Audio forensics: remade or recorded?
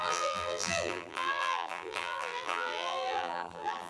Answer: remade